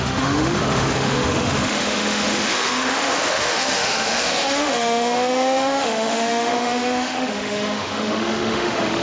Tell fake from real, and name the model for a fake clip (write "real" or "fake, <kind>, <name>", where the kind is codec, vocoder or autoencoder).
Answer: fake, autoencoder, DAC-VAE